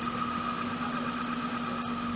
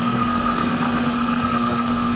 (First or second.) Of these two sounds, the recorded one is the first